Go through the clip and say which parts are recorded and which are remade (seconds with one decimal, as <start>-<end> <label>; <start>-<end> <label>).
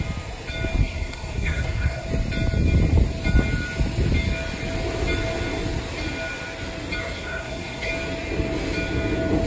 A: 0.0-0.8 recorded; 0.8-2.1 remade; 2.1-7.0 recorded; 7.0-7.9 remade; 7.9-9.5 recorded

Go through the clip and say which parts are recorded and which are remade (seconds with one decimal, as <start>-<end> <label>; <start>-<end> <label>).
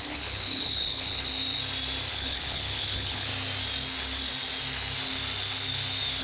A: 0.0-1.3 remade; 1.3-2.1 recorded; 2.1-3.3 remade; 3.3-6.2 recorded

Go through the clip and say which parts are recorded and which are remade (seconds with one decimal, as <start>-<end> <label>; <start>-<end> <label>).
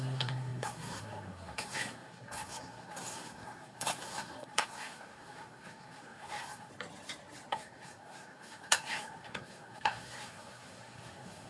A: 0.0-6.7 remade; 6.7-7.5 recorded; 7.5-11.5 remade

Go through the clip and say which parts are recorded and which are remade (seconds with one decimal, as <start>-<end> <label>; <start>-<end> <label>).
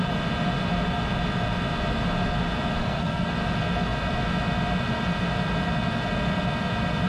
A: 0.0-2.8 recorded; 2.8-3.3 remade; 3.3-7.1 recorded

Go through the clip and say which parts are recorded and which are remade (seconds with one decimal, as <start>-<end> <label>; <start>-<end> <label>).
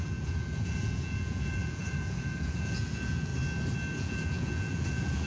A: 0.0-3.3 remade; 3.3-4.0 recorded; 4.0-5.3 remade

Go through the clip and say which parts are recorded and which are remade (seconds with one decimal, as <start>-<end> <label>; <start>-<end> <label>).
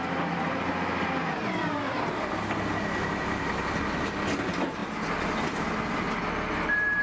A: 0.0-7.0 recorded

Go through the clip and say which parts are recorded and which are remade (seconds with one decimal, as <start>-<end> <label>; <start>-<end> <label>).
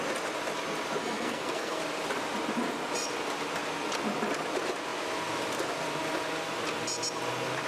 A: 0.0-1.0 recorded; 1.0-1.8 remade; 1.8-7.7 recorded